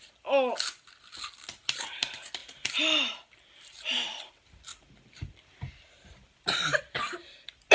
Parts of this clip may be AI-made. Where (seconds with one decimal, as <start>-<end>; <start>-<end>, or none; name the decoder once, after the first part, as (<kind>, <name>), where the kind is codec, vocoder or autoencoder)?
2.4-4.3 (vocoder, BigVGAN v2)